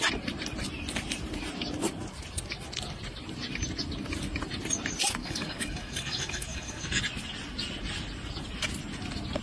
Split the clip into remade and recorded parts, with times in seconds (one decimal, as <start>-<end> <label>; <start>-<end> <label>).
0.0-5.2 recorded; 5.2-7.0 remade; 7.0-9.4 recorded